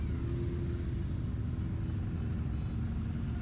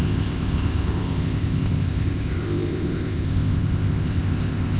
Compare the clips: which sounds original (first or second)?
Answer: first